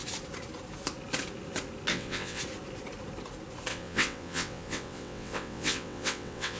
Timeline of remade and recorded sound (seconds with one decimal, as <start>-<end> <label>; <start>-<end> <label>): 0.0-1.9 recorded; 1.9-2.4 remade; 2.4-3.7 recorded; 3.7-6.6 remade